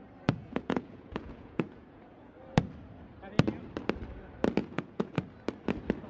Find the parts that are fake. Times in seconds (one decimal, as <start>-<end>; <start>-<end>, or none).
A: 0.4-2.3; 4.6-5.2